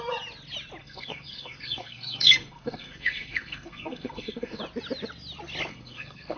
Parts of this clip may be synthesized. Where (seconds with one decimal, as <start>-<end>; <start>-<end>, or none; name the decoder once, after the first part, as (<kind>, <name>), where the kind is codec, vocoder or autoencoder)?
0.8-4.6 (codec, SNAC); 5.7-6.4